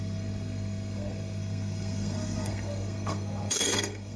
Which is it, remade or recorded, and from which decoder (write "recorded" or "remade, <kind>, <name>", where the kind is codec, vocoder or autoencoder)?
remade, codec, SNAC